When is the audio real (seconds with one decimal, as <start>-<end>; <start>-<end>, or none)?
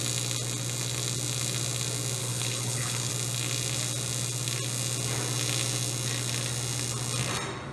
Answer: 0.0-2.2; 3.1-7.7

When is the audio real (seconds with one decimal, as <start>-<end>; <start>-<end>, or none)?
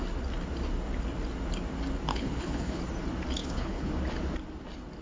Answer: 0.0-2.1; 2.8-3.4; 3.9-5.0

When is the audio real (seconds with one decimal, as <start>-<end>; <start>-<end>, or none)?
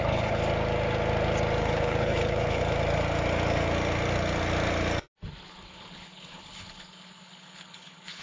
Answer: 0.4-1.6; 2.6-5.5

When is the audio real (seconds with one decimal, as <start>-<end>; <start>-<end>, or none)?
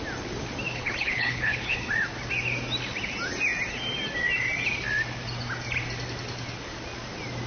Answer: 0.0-0.7; 1.9-7.5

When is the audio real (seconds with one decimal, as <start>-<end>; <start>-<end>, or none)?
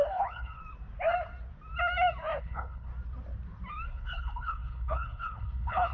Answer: 0.6-2.4; 2.9-3.9